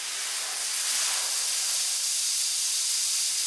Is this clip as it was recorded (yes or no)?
yes